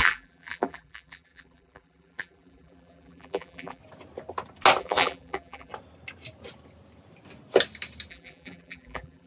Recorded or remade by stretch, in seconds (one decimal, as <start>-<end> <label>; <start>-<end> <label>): 0.0-3.8 remade; 3.8-4.8 recorded; 4.8-5.7 remade; 5.7-8.1 recorded; 8.1-9.3 remade